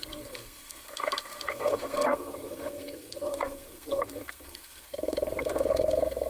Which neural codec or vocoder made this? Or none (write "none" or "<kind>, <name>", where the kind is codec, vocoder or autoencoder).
codec, SNAC